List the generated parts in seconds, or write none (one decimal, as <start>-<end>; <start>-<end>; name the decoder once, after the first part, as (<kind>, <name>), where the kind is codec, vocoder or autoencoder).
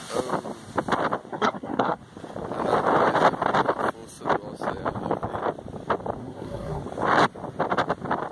1.3-2.0 (codec, SNAC); 6.2-6.8